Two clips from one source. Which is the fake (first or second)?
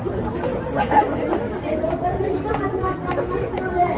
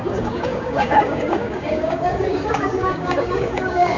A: second